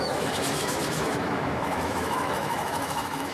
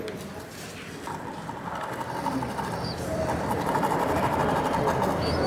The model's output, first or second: first